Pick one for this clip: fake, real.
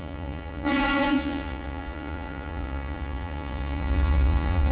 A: fake